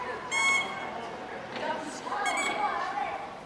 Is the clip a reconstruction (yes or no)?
no